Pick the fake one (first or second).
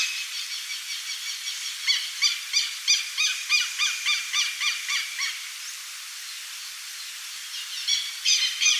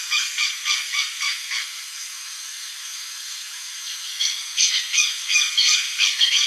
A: second